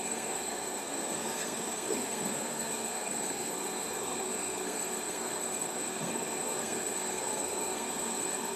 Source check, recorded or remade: remade